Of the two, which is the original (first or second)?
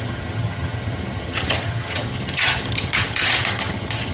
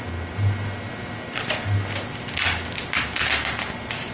second